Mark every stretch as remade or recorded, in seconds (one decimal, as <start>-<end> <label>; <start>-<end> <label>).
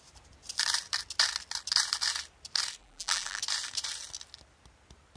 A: 0.0-2.8 recorded; 2.8-3.4 remade; 3.4-5.2 recorded